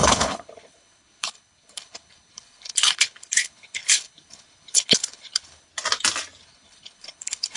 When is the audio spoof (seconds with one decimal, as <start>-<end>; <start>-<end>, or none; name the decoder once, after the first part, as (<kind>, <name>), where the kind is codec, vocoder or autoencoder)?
0.0-5.7 (codec, HILCodec); 6.4-7.6